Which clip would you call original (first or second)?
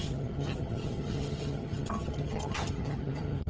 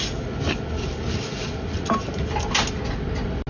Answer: second